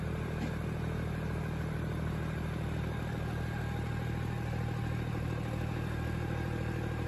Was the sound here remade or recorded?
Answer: recorded